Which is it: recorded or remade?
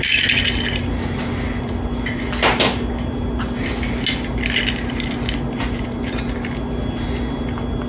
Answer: recorded